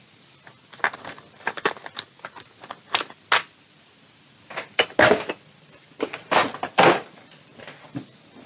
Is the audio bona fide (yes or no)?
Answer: yes